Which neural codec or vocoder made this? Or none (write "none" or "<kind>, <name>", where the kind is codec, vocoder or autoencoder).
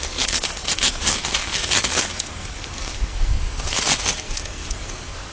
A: codec, SNAC